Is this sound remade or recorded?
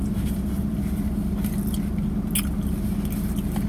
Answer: recorded